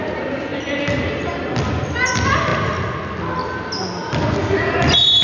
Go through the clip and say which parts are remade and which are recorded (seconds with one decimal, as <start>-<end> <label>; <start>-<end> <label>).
0.0-5.2 recorded